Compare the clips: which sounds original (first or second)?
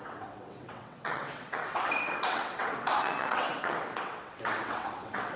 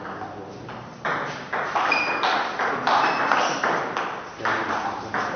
second